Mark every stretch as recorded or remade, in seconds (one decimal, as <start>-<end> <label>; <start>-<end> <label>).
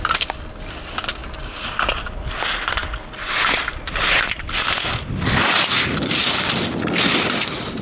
0.0-7.8 recorded